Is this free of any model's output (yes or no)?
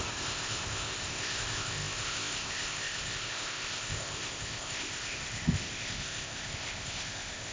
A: no